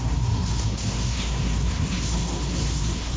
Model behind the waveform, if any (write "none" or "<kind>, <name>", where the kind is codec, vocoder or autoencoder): codec, SNAC